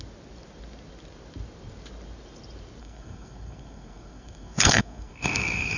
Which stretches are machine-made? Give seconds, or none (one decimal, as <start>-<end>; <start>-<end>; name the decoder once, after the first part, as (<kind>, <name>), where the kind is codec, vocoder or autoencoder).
2.8-5.8 (codec, SNAC)